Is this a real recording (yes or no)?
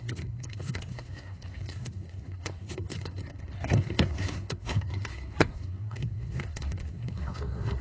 no